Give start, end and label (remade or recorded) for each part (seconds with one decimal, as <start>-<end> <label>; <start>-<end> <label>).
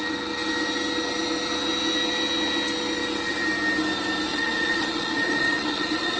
0.0-4.3 recorded; 4.3-6.2 remade